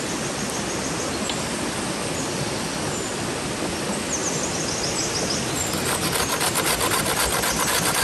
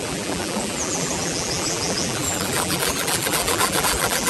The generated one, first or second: second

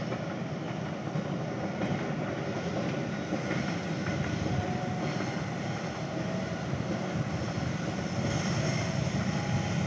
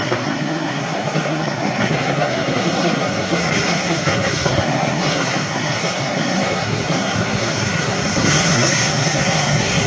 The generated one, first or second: second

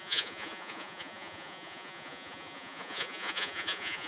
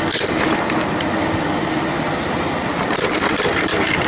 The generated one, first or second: first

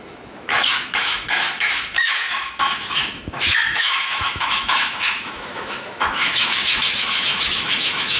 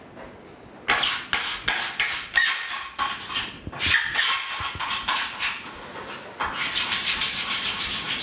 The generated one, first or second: first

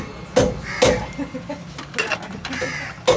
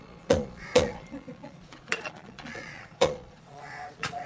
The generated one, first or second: second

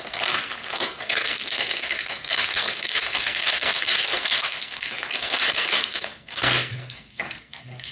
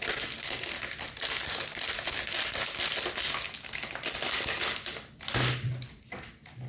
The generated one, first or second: first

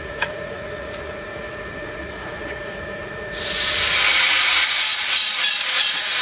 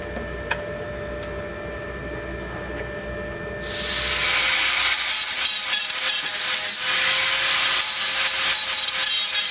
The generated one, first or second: first